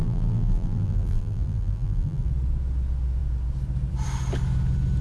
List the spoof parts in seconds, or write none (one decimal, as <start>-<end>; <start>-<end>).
0.0-2.3